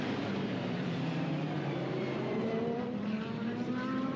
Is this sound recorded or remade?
remade